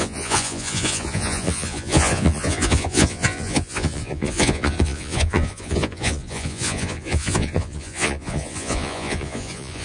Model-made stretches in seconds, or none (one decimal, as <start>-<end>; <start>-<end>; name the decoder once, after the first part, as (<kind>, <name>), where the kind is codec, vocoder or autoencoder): 0.0-9.8 (vocoder, Vocos)